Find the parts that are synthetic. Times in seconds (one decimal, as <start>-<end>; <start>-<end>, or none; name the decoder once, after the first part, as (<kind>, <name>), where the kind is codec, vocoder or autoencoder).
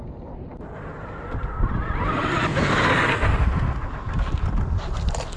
0.0-2.5 (vocoder, BigVGAN v2); 4.3-5.4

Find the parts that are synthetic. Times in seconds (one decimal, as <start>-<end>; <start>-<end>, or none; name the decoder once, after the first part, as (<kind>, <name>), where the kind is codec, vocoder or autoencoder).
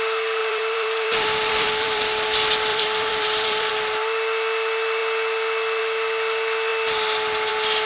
0.4-2.0 (vocoder, BigVGAN v2); 2.7-3.7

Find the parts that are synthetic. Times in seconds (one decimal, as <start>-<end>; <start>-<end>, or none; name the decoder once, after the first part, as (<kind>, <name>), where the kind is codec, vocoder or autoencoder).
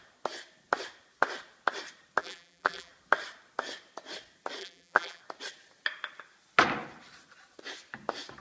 2.2-2.9 (vocoder, BigVGAN v2); 4.6-5.2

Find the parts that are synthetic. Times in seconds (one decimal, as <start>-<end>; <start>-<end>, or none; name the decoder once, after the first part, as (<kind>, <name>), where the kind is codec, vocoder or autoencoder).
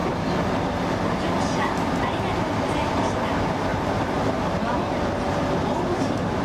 3.7-5.1 (vocoder, BigVGAN v2)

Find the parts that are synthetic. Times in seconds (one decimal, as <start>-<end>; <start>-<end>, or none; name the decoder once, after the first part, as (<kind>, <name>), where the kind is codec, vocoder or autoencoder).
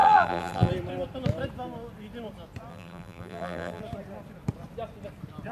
0.0-0.7 (vocoder, BigVGAN v2); 2.7-3.8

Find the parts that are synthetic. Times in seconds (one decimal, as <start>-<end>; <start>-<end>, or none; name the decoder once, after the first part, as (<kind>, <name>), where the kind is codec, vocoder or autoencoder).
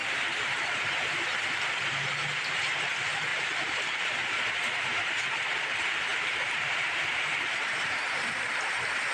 0.0-1.4 (vocoder, BigVGAN v2); 3.3-4.6; 6.1-8.3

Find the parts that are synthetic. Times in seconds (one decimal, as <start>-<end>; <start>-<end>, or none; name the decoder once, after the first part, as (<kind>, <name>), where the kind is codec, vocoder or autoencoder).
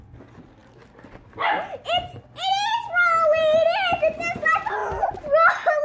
none